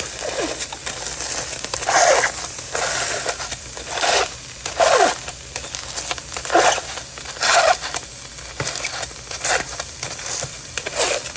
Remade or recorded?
recorded